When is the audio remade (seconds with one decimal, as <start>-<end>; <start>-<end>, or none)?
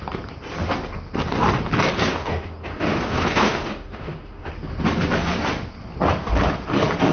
2.1-4.5